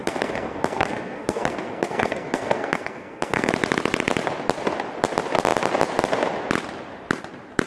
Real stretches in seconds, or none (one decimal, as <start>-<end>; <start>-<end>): 3.5-7.7